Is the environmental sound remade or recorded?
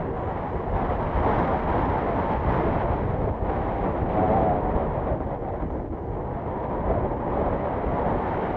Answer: recorded